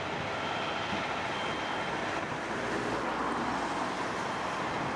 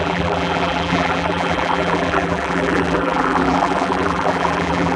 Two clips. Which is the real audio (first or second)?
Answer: first